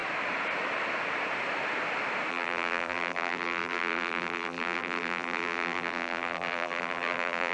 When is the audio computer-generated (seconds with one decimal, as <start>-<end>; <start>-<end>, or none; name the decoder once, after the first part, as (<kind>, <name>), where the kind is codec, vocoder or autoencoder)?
2.3-7.5 (vocoder, BigVGAN v2)

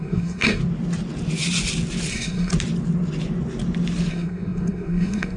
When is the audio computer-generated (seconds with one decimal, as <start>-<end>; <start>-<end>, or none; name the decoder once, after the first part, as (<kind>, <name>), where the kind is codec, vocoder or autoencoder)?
0.0-0.6 (codec, SNAC); 2.1-2.5; 4.1-5.4

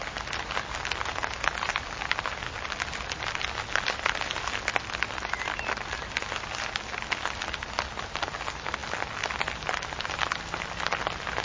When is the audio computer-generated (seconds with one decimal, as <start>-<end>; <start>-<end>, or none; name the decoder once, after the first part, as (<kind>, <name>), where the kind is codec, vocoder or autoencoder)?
none

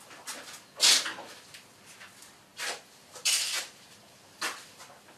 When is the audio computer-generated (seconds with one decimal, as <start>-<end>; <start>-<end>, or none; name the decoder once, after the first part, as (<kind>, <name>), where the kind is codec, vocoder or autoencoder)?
2.5-4.7 (vocoder, BigVGAN v2)

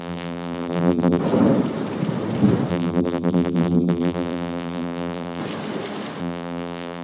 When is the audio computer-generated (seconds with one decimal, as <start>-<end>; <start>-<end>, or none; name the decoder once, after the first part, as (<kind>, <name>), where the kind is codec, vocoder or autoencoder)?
0.0-1.2 (vocoder, BigVGAN v2); 2.7-5.4; 6.2-7.0

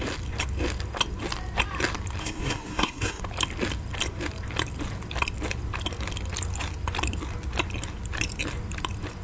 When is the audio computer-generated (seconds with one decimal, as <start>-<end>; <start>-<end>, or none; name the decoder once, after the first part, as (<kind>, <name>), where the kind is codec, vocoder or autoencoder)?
2.2-3.2 (codec, SNAC)

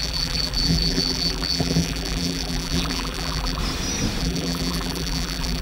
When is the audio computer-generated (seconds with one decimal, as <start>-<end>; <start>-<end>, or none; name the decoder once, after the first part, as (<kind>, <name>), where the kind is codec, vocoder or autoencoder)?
0.0-3.6 (vocoder, BigVGAN v2); 4.2-5.6

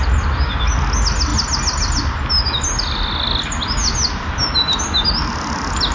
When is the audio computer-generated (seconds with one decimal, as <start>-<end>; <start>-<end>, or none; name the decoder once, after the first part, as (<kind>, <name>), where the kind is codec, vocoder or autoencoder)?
none